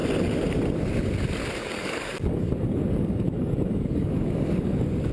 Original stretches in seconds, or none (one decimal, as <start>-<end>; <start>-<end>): 0.0-1.6